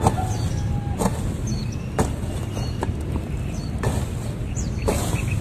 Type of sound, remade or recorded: recorded